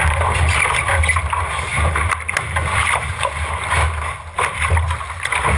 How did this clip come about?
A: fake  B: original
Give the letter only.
B